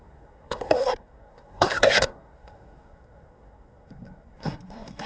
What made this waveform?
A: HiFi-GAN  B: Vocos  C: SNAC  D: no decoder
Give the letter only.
C